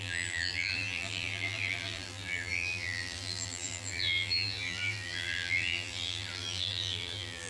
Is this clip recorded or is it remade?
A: remade